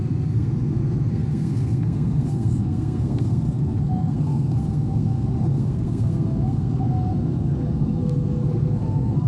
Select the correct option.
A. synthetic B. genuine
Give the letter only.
A